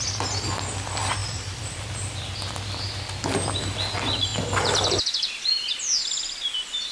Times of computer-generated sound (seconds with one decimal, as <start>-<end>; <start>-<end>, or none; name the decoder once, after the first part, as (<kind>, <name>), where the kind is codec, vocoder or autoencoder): 1.2-2.3 (vocoder, BigVGAN v2); 4.3-5.5

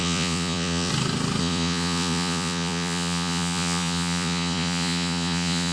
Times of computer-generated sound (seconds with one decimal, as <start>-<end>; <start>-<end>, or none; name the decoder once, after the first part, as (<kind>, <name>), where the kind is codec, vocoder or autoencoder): 0.0-0.9 (vocoder, Vocos); 1.4-5.7

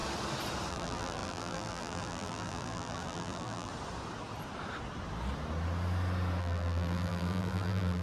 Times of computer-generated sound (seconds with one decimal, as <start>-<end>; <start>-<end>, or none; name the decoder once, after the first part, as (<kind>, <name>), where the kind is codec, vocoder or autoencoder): 0.7-3.7 (vocoder, BigVGAN v2); 6.4-8.0